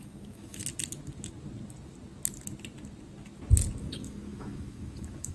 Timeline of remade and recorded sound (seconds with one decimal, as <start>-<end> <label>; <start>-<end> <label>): 0.0-0.6 remade; 0.6-3.8 recorded; 3.8-5.3 remade